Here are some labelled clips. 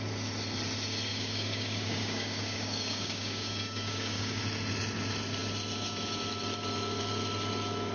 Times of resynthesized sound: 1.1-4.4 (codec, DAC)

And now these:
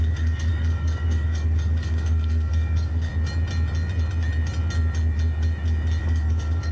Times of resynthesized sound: 0.0-3.1 (codec, DAC); 6.0-6.7